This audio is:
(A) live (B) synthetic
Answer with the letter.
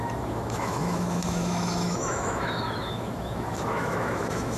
B